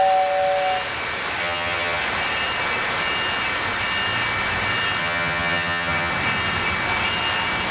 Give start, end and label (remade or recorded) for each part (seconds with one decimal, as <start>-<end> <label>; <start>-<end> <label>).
0.0-1.4 recorded; 1.4-2.0 remade; 2.0-5.0 recorded; 5.0-6.1 remade; 6.1-7.7 recorded